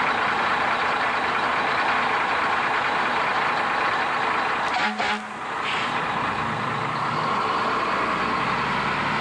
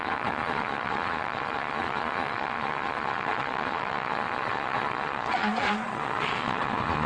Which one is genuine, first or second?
first